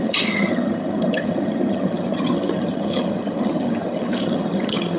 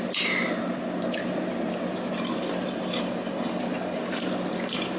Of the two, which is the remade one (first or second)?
first